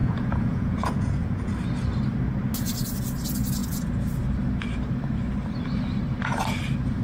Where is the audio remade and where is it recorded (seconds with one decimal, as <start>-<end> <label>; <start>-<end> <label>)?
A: 0.0-1.5 remade; 1.5-7.0 recorded